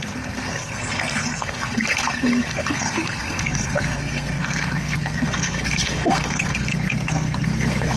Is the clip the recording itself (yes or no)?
no